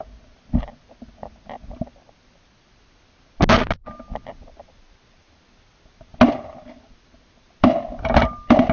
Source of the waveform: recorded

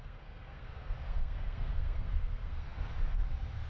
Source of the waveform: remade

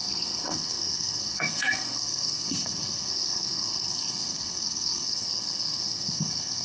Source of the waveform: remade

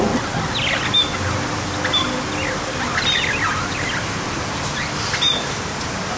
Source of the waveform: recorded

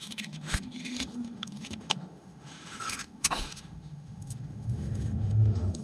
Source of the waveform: remade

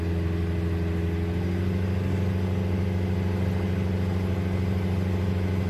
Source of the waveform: recorded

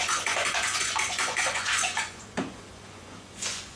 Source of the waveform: remade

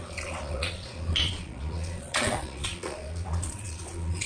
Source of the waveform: remade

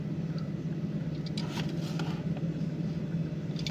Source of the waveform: recorded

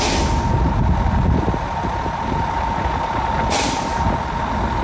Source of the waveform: recorded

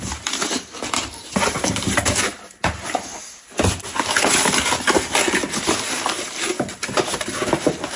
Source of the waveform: recorded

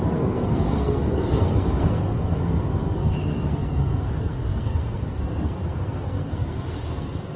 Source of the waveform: remade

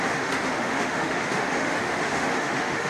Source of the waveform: remade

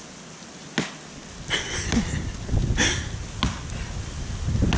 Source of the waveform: recorded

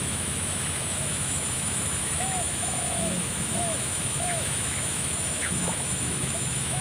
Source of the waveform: remade